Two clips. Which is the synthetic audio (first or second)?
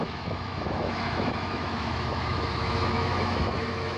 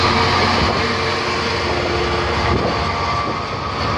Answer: first